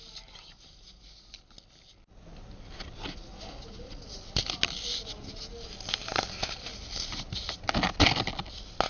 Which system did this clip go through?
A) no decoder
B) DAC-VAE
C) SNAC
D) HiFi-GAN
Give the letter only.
A